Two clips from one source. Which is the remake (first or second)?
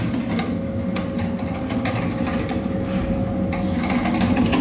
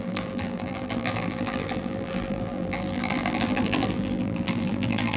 second